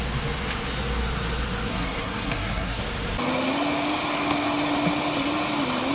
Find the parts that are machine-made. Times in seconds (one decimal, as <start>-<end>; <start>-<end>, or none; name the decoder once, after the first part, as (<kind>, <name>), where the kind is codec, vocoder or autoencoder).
1.7-2.8 (codec, SNAC)